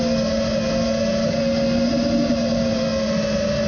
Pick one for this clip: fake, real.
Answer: real